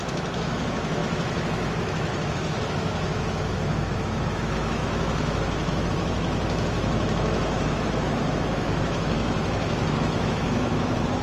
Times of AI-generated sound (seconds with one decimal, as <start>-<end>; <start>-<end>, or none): 0.0-11.2

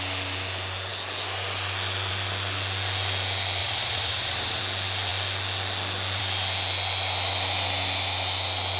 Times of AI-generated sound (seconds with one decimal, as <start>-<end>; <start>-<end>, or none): 3.6-4.6

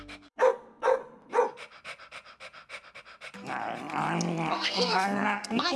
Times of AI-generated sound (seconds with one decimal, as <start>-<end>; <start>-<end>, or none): 0.0-1.0; 4.5-5.8

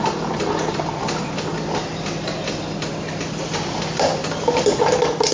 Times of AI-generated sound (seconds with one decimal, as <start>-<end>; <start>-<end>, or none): none

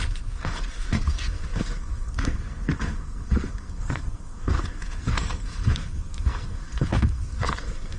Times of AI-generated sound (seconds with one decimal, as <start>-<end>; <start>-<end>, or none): 0.0-8.0

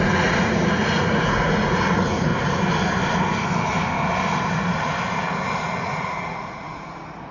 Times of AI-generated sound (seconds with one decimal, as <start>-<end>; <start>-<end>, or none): 0.0-2.3; 5.8-7.3

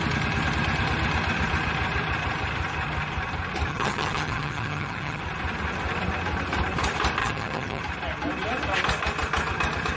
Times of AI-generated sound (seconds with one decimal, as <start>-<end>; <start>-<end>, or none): 3.7-5.2; 7.2-7.8

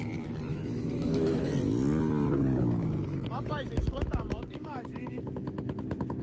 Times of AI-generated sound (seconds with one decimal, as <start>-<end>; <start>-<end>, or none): 0.5-1.5; 2.5-6.2